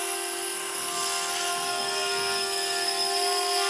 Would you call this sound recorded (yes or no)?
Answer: no